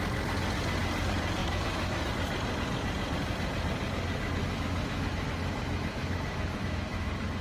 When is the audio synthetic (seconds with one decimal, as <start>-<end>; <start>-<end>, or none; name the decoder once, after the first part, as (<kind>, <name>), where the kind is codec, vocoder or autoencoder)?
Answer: 1.4-2.1 (autoencoder, DAC-VAE); 4.4-7.4